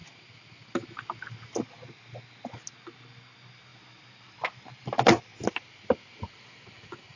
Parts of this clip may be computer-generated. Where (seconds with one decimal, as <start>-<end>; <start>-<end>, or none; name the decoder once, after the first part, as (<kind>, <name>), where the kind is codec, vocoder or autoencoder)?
none